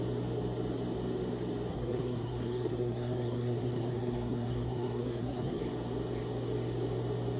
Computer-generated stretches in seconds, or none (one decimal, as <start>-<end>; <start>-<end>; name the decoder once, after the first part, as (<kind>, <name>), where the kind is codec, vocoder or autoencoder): 1.7-5.6 (codec, SNAC)